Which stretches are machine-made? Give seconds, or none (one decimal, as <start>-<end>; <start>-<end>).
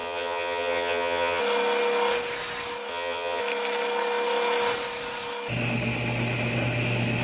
0.0-1.4; 2.9-3.4